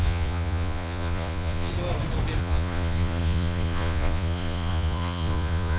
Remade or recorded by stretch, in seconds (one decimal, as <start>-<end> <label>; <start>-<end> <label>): 0.0-1.7 remade; 1.7-2.4 recorded; 2.4-5.8 remade